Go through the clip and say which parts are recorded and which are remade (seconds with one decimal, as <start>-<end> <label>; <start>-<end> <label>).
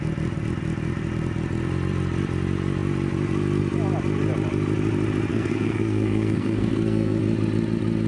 0.0-5.3 recorded; 5.3-7.2 remade; 7.2-8.1 recorded